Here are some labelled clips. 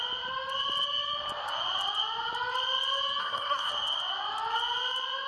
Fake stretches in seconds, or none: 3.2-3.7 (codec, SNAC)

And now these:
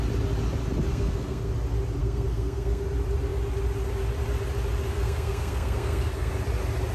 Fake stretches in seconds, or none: 0.9-1.5 (codec, SNAC); 2.0-2.8; 4.9-6.3

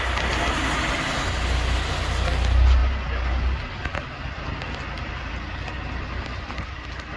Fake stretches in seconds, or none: none

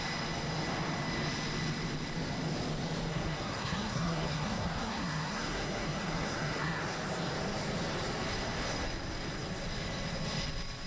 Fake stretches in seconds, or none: 3.1-6.8 (codec, SNAC)